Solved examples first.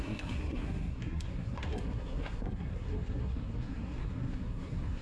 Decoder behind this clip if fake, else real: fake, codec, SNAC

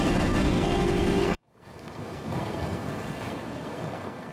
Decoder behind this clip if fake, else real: fake, codec, SNAC